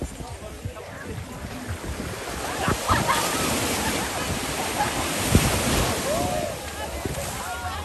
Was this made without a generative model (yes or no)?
yes